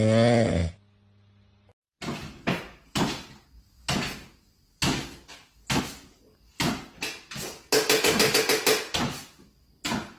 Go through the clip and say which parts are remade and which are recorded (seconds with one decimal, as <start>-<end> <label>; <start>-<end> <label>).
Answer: 0.0-10.2 recorded